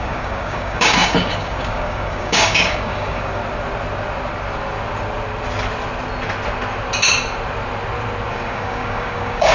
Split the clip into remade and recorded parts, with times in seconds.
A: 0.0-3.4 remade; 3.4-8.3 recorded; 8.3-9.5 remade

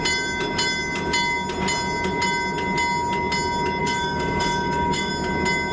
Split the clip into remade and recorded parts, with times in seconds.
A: 0.0-3.8 recorded; 3.8-5.1 remade; 5.1-5.7 recorded

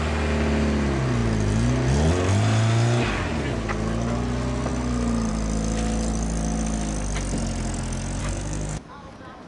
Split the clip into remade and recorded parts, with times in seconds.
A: 0.0-8.2 recorded; 8.2-9.1 remade; 9.1-9.5 recorded

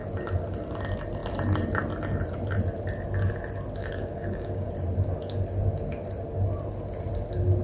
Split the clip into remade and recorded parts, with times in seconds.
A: 0.0-3.8 recorded; 3.8-4.7 remade; 4.7-7.6 recorded

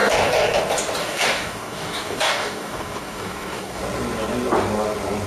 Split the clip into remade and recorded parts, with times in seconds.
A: 0.0-0.6 remade; 0.6-1.0 recorded; 1.0-3.8 remade; 3.8-5.3 recorded

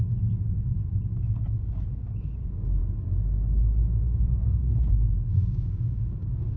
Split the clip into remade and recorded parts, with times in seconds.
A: 0.0-2.8 remade; 2.8-4.4 recorded; 4.4-6.6 remade

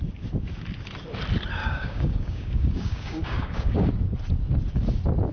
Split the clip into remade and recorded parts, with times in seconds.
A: 0.0-1.6 recorded; 1.6-3.9 remade; 3.9-5.3 recorded

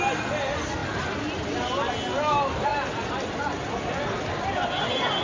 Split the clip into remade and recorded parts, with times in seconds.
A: 0.0-5.2 recorded